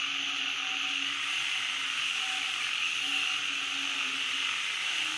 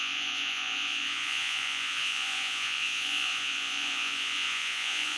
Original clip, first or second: first